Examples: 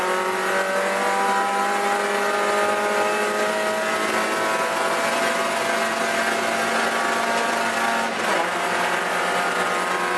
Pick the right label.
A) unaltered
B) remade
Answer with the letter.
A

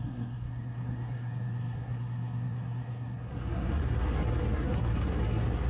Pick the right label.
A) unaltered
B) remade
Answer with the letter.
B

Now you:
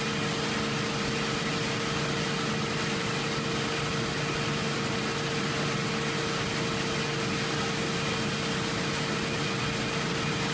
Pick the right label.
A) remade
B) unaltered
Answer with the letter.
B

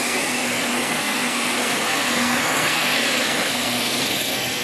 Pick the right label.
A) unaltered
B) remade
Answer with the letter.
B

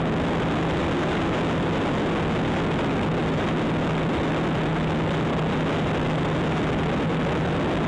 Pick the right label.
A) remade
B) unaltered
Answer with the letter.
B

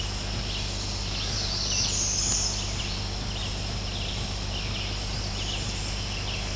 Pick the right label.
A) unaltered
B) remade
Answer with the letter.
A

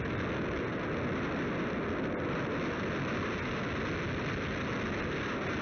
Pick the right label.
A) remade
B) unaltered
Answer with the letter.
B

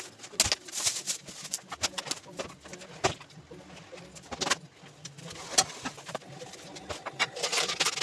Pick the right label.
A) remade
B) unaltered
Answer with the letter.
B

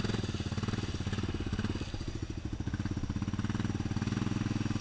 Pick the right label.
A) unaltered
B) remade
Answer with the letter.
A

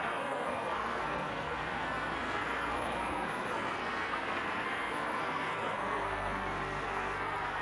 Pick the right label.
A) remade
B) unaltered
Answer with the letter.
A